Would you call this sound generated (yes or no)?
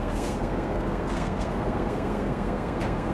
yes